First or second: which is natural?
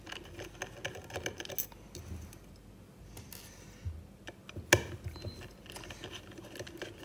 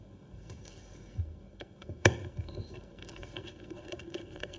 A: first